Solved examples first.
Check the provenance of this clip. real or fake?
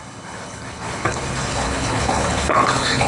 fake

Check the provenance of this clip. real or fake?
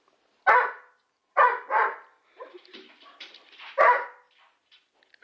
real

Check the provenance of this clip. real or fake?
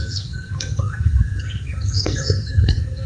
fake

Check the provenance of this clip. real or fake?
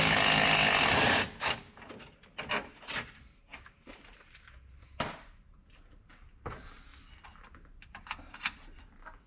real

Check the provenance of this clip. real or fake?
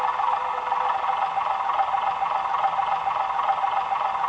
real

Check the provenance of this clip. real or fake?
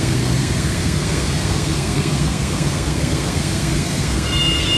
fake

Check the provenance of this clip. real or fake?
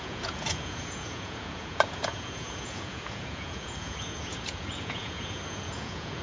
fake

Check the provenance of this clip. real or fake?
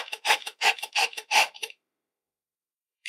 fake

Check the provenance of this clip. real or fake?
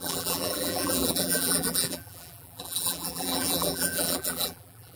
fake